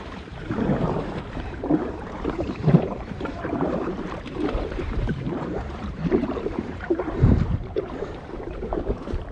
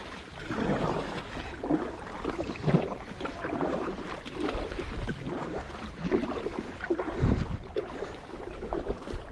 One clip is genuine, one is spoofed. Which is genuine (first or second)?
second